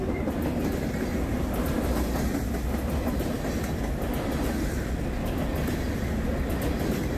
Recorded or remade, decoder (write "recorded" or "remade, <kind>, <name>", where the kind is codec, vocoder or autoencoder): recorded